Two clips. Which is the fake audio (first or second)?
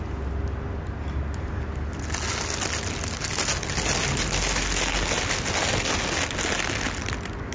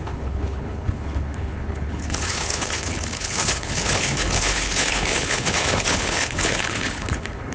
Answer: second